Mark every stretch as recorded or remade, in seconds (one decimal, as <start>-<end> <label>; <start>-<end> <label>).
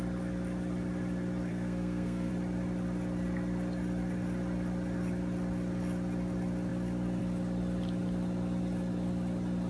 0.0-1.5 recorded; 1.5-2.3 remade; 2.3-9.7 recorded